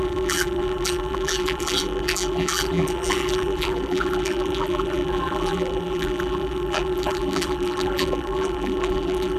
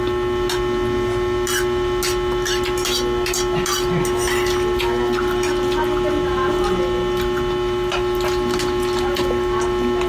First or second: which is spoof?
first